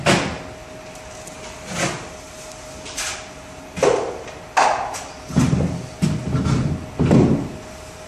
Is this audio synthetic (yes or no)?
no